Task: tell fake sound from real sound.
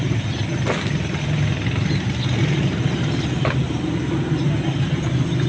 real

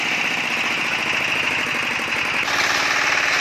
real